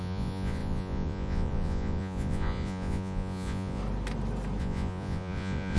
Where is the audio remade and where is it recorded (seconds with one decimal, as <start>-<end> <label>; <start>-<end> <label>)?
0.0-3.8 remade; 3.8-4.6 recorded; 4.6-5.8 remade